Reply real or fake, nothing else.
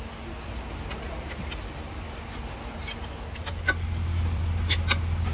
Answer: real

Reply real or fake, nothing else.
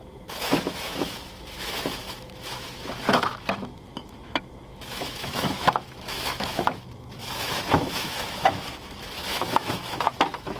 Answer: fake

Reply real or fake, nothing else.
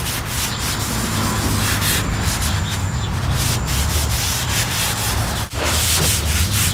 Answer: real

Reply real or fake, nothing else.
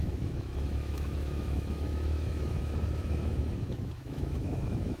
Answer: fake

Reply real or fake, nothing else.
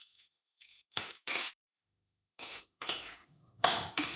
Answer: fake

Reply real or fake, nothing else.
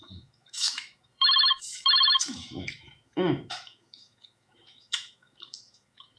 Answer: fake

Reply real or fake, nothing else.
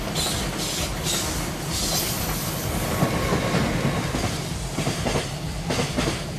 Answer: real